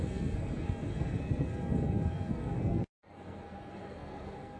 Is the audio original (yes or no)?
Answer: no